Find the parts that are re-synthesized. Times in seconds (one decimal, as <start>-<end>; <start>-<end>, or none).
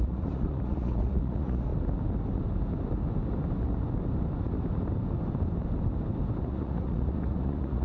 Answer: 0.0-1.7; 6.4-7.8